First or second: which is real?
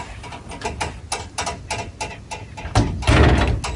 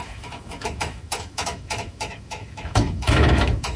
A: first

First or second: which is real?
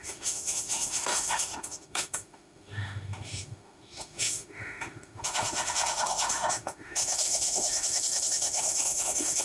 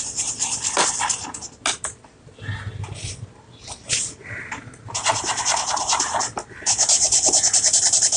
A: second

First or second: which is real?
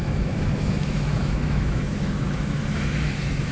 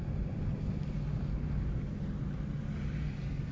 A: second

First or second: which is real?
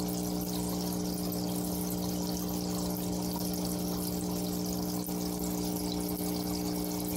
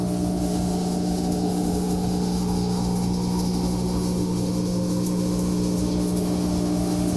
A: first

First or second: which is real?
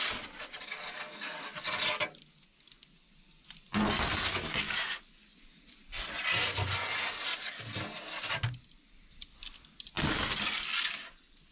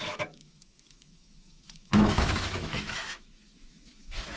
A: first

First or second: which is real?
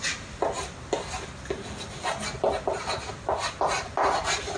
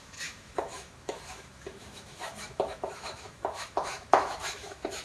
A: first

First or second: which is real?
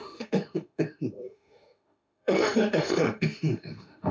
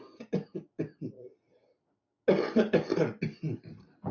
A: second